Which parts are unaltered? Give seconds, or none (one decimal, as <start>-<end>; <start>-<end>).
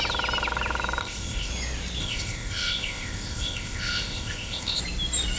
0.0-1.0; 1.5-2.0; 4.8-5.4